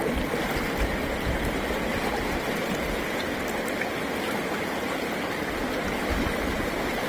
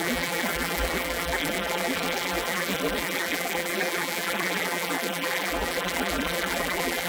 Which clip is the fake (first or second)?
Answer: second